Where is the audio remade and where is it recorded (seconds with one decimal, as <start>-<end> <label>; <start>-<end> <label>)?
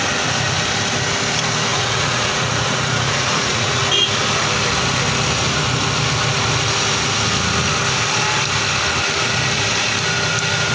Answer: 0.0-1.7 recorded; 1.7-3.8 remade; 3.8-10.7 recorded